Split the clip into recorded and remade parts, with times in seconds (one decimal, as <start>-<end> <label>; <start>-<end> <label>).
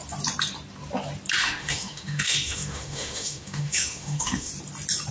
0.0-1.4 recorded; 1.4-4.5 remade; 4.5-5.1 recorded